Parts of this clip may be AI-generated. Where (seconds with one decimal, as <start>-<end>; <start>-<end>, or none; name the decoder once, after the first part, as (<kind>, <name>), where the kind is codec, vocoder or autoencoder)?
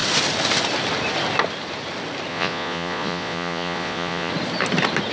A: 2.3-4.3 (vocoder, Vocos)